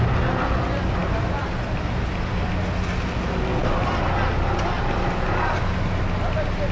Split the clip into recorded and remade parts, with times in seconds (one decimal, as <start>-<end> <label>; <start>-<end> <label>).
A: 0.0-6.7 recorded